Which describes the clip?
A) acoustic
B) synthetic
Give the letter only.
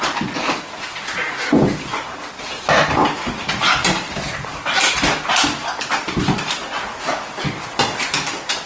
A